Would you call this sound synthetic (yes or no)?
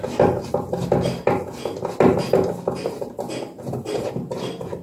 no